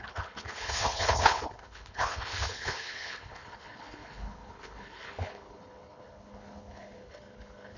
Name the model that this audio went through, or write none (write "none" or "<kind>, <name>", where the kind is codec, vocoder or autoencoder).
codec, HILCodec